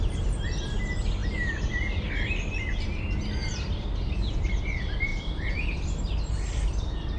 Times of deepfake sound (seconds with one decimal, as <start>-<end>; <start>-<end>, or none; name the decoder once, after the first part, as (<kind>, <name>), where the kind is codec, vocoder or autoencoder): 5.1-6.3 (vocoder, BigVGAN v2)